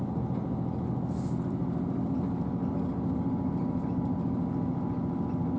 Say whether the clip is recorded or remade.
recorded